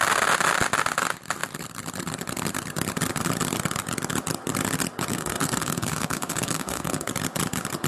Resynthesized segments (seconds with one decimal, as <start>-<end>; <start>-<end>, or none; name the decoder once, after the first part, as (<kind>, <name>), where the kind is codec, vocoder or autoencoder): 5.1-7.1 (codec, SNAC)